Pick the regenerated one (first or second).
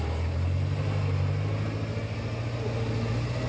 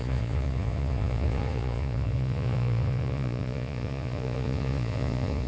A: second